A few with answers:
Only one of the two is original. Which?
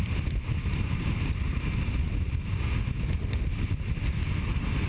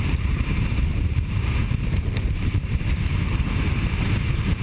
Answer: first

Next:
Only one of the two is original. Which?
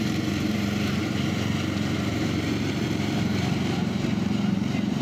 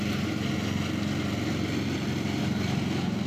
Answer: second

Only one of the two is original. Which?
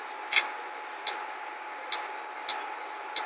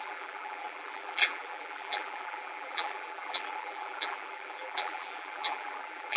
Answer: first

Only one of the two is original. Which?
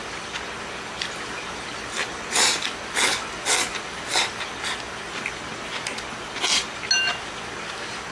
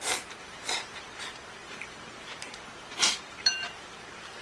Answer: first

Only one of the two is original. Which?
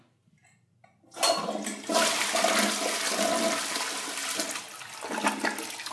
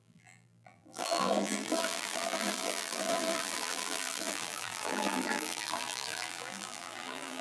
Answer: first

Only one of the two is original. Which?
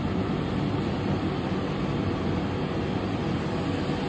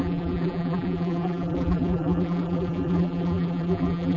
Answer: first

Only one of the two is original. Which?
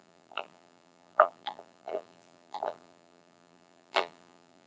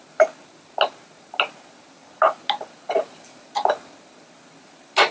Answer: second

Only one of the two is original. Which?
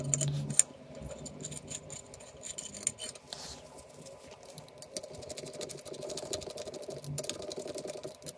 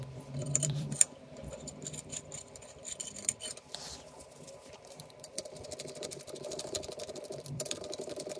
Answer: first